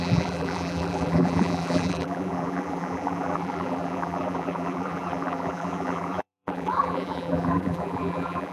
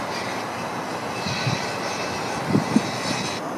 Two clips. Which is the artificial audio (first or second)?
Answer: first